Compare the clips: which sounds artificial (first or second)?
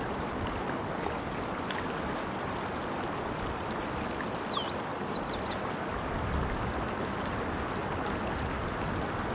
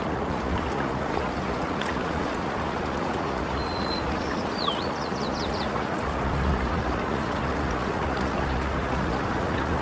second